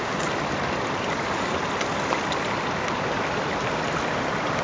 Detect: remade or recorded recorded